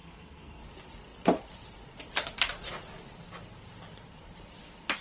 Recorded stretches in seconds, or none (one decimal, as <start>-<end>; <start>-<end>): 0.6-5.0